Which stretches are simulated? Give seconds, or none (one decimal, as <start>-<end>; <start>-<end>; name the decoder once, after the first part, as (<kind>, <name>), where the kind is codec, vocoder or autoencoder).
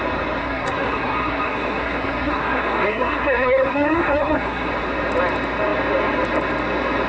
0.4-4.7 (codec, SNAC)